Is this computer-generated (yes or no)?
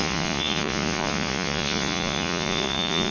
yes